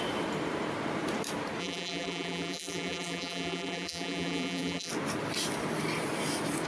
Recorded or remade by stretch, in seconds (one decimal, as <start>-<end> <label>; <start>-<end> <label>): 0.0-1.6 recorded; 1.6-4.9 remade; 4.9-6.7 recorded